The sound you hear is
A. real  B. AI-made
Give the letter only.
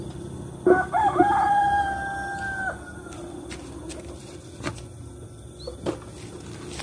A